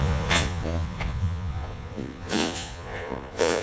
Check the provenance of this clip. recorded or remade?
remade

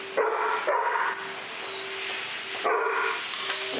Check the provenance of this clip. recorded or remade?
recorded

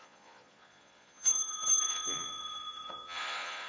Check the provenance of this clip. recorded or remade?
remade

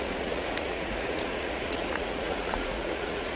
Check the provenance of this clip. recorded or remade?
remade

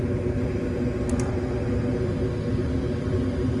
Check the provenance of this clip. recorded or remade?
recorded